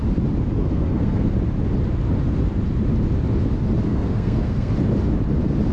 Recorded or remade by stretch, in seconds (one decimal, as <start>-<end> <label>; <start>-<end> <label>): 0.0-0.6 recorded; 0.6-1.3 remade; 1.3-3.9 recorded; 3.9-4.7 remade; 4.7-5.7 recorded